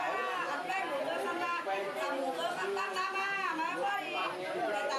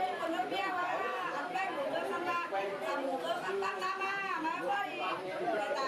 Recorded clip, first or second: first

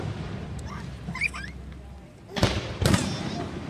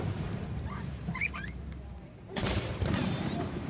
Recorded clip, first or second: first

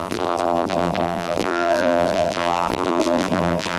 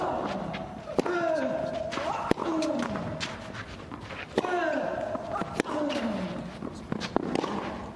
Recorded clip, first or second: second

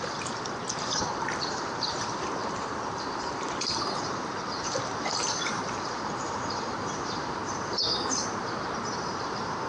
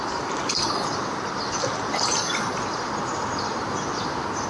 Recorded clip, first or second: second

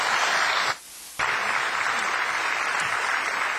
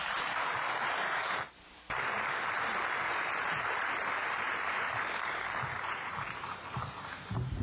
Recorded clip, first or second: first